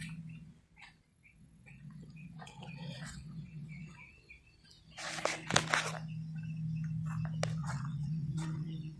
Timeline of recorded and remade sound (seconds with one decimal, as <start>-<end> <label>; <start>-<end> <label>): 0.0-1.1 recorded; 1.1-4.3 remade; 4.3-7.6 recorded; 7.6-9.0 remade